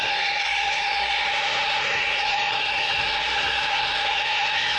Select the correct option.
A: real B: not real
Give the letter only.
B